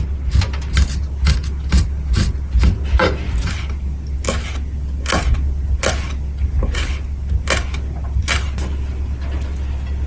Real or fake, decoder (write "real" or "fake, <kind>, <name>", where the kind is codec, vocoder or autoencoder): real